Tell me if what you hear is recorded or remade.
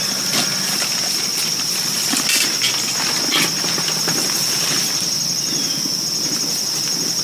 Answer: recorded